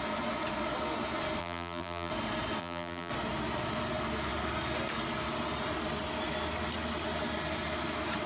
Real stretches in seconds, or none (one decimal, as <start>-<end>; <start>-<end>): 0.0-1.4; 2.1-2.6; 3.1-8.3